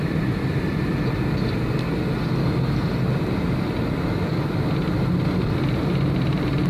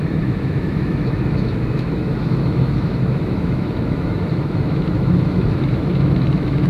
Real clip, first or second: first